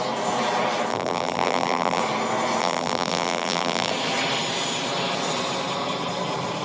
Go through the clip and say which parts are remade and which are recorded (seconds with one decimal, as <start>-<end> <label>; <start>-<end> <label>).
0.0-0.9 recorded; 0.9-2.0 remade; 2.0-2.6 recorded; 2.6-3.9 remade; 3.9-6.6 recorded